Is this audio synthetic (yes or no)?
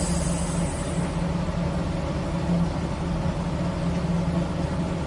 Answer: no